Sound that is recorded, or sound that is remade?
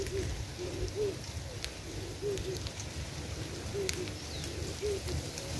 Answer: recorded